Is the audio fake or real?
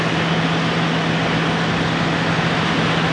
real